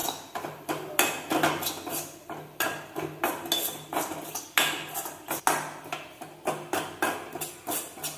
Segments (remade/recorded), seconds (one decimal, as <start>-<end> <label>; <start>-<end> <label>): 0.0-8.2 recorded